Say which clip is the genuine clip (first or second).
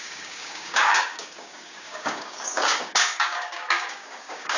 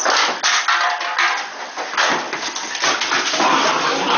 second